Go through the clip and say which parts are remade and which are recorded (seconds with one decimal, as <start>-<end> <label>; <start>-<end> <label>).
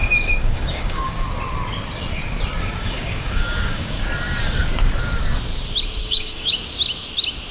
0.0-1.1 remade; 1.1-2.6 recorded; 2.6-4.0 remade; 4.0-6.0 recorded; 6.0-6.5 remade; 6.5-7.5 recorded